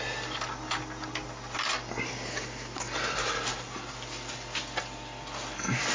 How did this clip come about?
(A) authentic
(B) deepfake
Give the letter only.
A